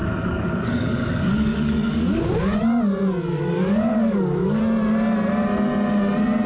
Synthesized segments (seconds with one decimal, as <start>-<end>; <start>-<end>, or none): 0.0-2.2; 3.3-4.6